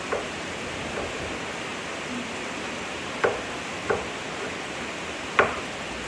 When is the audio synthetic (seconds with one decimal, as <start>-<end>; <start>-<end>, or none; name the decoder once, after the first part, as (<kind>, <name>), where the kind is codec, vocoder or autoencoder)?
none